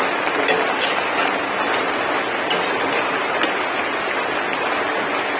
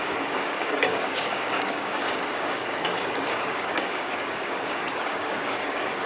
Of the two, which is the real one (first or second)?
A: first